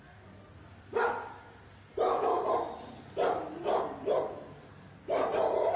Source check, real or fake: real